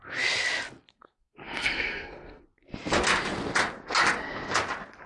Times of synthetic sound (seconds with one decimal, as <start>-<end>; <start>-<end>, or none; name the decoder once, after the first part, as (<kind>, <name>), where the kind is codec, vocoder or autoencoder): 0.9-2.4 (codec, SNAC)